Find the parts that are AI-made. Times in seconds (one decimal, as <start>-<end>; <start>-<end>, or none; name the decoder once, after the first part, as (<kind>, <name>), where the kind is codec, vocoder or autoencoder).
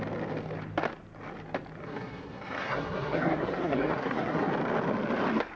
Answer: 1.8-4.5 (codec, SNAC)